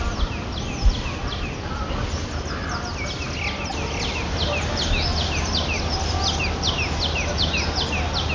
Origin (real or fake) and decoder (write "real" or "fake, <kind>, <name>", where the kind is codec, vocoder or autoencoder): real